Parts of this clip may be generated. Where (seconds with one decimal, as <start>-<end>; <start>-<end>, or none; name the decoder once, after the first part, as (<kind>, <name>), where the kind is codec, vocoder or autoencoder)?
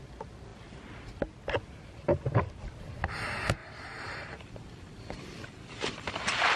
3.6-6.6 (vocoder, BigVGAN v2)